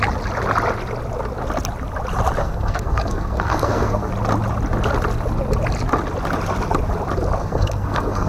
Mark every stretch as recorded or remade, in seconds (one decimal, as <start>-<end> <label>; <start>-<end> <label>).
0.0-2.4 recorded; 2.4-4.1 remade; 4.1-7.4 recorded; 7.4-8.3 remade